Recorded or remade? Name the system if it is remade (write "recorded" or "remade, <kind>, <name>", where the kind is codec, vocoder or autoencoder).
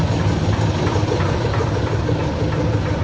recorded